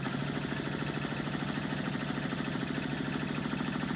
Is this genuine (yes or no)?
yes